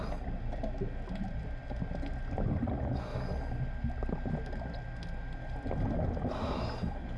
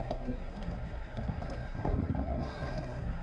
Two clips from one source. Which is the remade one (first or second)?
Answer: second